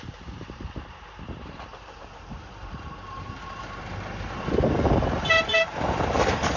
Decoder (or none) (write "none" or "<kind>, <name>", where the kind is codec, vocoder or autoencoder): vocoder, BigVGAN v2